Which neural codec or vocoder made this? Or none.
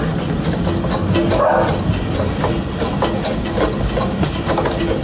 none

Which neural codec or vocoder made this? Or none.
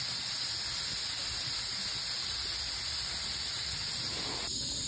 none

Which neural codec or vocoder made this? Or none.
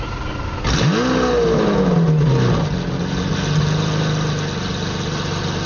none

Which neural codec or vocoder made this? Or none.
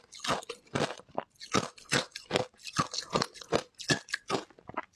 none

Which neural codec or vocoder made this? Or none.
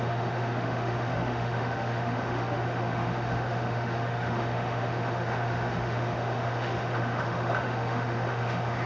autoencoder, DAC-VAE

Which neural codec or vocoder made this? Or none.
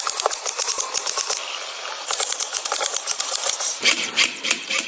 vocoder, BigVGAN v2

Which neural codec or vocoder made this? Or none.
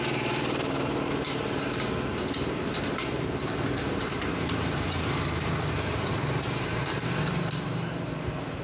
vocoder, BigVGAN v2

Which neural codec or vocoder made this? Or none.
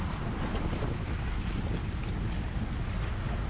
none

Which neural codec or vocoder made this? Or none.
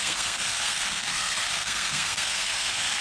codec, SNAC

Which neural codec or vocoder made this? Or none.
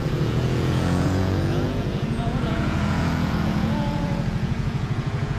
vocoder, Vocos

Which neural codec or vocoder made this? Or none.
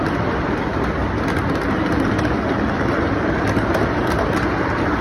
none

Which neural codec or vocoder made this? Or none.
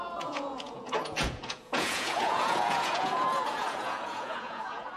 vocoder, Vocos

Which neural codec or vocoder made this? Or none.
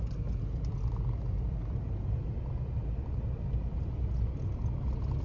none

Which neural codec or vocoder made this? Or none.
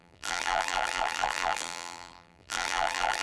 vocoder, BigVGAN v2